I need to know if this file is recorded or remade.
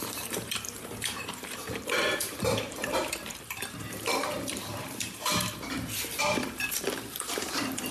remade